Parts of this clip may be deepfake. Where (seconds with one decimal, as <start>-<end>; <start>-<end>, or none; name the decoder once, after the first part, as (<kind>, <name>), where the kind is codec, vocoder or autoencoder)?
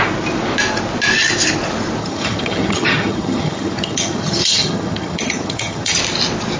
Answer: 2.0-6.0 (vocoder, HiFi-GAN)